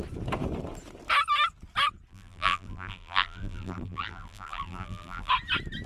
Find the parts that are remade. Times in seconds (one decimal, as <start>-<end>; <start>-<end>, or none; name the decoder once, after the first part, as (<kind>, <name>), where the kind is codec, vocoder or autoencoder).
2.1-5.3 (vocoder, BigVGAN v2)